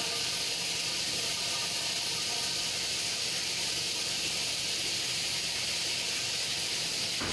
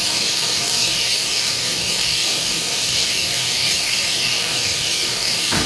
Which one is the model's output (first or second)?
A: second